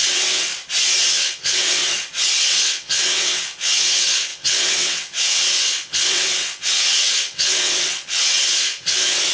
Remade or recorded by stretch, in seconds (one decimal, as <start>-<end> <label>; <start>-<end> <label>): 0.0-0.5 remade; 0.5-1.1 recorded; 1.1-1.8 remade; 1.8-2.4 recorded; 2.4-9.3 remade